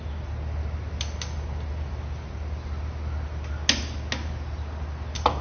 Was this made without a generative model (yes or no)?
yes